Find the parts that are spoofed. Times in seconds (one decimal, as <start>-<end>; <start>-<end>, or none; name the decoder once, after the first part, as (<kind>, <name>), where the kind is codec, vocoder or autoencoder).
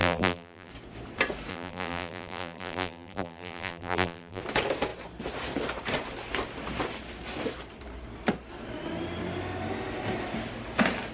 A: 0.0-0.7 (vocoder, BigVGAN v2); 1.5-4.4